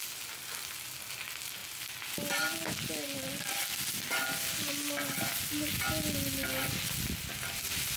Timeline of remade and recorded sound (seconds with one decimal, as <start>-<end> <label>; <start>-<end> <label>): 0.0-8.0 recorded